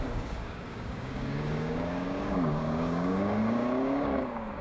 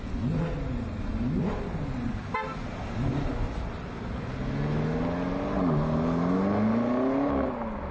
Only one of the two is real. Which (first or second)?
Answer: second